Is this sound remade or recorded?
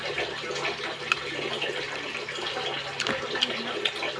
recorded